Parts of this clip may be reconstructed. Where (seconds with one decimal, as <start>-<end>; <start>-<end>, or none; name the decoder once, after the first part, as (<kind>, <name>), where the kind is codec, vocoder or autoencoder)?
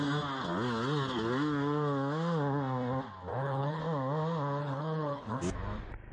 3.3-3.8 (codec, HILCodec); 4.6-5.4